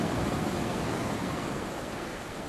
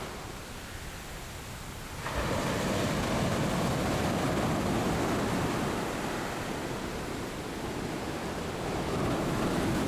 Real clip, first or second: second